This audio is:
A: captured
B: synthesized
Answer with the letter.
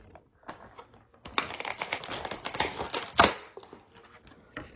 A